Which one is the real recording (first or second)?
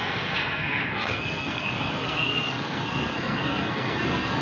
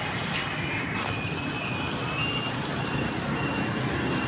second